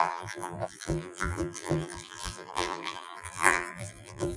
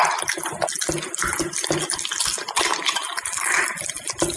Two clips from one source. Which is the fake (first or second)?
first